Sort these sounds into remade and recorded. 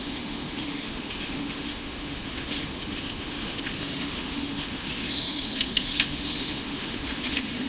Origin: remade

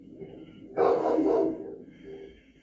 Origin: remade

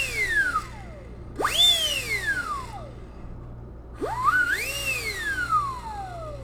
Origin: recorded